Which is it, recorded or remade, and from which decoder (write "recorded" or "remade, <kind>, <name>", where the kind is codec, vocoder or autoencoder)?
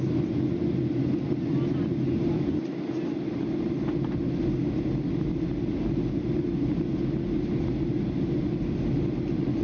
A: recorded